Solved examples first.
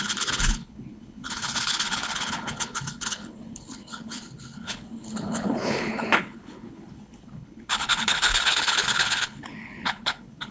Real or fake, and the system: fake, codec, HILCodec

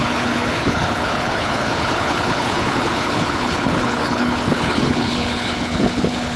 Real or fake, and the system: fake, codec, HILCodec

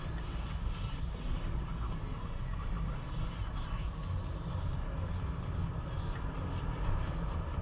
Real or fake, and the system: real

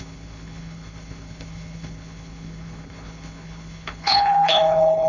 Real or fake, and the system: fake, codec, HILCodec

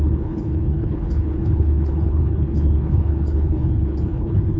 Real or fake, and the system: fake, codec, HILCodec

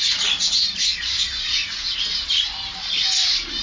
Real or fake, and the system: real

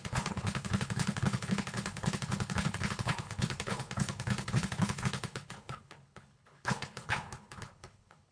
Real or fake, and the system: fake, codec, HILCodec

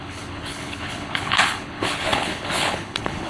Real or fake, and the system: fake, codec, HILCodec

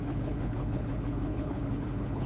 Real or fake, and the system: fake, codec, HILCodec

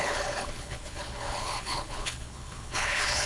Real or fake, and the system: fake, codec, HILCodec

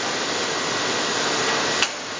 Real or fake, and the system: real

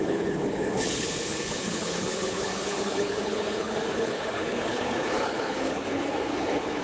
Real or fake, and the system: fake, codec, HILCodec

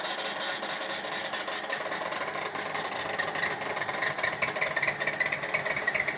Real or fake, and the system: real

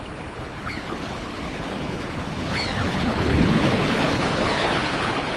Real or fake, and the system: fake, codec, HILCodec